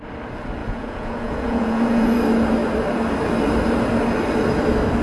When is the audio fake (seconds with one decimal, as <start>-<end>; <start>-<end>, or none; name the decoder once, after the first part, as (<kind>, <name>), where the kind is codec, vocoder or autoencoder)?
0.6-2.2 (vocoder, Vocos)